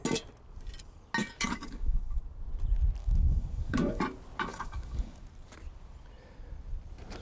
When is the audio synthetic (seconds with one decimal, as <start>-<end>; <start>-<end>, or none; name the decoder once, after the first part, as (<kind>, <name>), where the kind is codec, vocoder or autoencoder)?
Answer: 1.2-2.2 (codec, DAC); 3.0-4.0; 4.5-5.2